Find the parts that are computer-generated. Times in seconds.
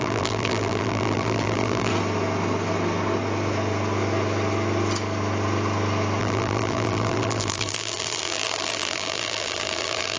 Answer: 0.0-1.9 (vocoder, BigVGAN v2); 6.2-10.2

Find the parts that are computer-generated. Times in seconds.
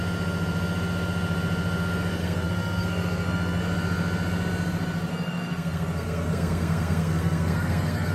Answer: 2.2-3.6 (codec, SNAC); 5.1-8.1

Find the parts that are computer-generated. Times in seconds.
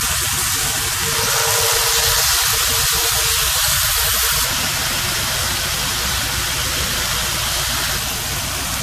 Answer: none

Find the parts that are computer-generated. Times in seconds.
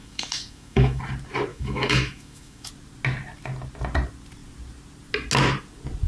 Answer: 0.0-1.0 (autoencoder, DAC-VAE); 1.5-2.7